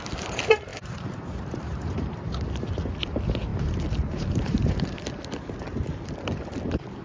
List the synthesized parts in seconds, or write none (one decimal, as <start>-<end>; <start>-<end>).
0.7-2.6; 3.5-4.7